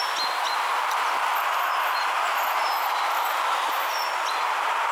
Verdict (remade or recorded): recorded